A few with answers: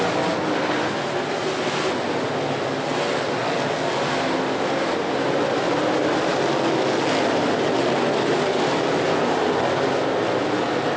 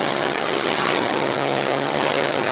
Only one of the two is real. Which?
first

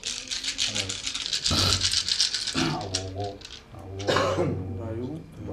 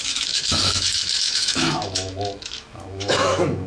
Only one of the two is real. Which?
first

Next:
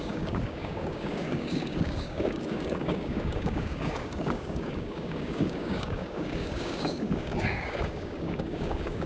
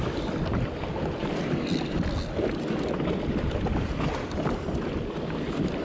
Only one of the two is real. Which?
second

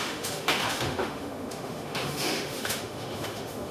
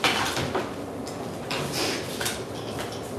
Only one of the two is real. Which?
second